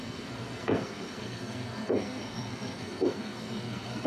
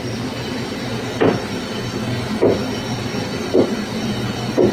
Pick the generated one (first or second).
first